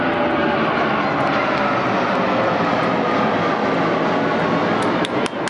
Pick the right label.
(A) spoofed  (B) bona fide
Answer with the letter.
B